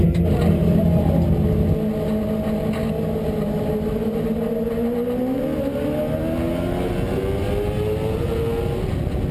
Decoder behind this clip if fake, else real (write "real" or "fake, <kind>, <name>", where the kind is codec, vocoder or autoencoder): real